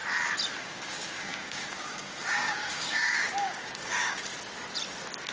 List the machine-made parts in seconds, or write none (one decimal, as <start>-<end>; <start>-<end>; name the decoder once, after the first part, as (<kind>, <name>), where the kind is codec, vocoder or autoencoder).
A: 0.6-4.3 (codec, DAC)